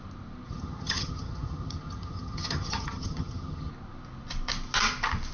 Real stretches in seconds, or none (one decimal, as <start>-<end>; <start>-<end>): 0.0-0.5; 3.7-5.3